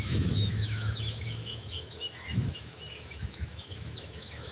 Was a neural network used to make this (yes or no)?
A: yes